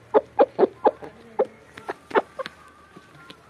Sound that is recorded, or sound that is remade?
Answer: recorded